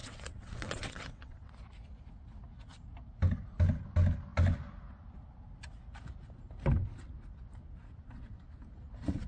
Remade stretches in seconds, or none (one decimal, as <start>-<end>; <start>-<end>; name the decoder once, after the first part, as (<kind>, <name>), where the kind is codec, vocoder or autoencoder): 0.0-1.5 (vocoder, WaveNeXt)